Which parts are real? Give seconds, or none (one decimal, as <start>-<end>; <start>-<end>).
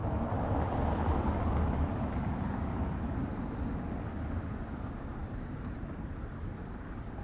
0.0-4.3